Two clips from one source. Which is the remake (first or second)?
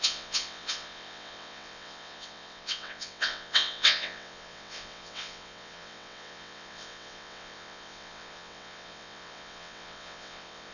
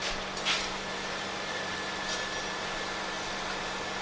first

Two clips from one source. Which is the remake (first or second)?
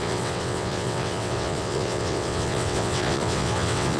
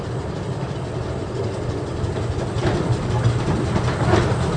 first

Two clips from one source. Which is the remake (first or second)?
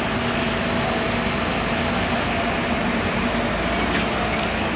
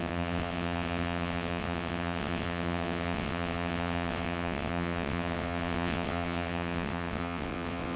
second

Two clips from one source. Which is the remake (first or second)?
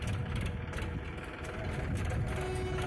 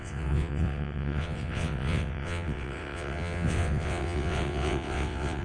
second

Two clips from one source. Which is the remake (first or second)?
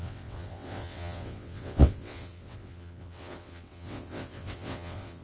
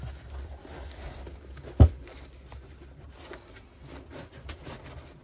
first